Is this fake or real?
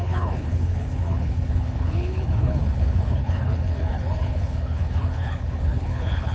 fake